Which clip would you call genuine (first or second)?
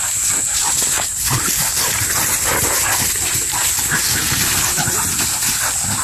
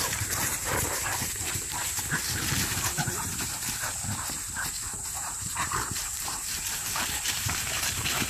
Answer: first